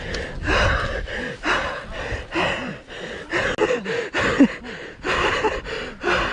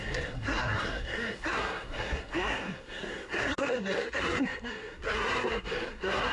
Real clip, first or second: first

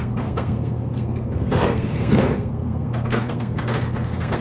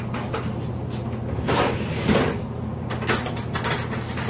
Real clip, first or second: second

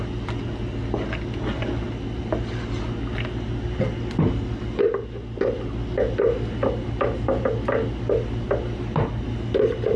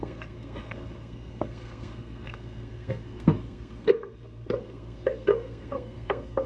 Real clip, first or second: first